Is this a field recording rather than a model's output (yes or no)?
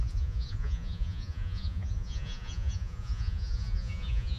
no